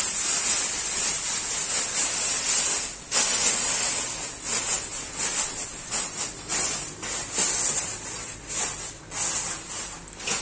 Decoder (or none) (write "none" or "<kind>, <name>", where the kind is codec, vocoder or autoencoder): none